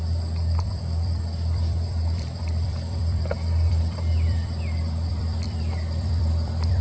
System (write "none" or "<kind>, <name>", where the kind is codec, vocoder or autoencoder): vocoder, BigVGAN v2